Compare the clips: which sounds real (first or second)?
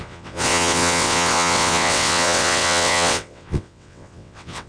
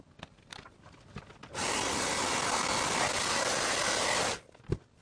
second